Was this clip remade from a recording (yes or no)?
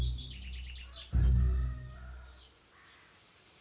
no